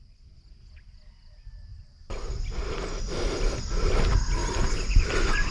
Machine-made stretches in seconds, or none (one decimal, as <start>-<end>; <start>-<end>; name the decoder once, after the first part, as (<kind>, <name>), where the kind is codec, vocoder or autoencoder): none